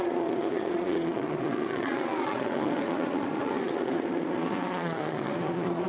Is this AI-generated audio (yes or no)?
yes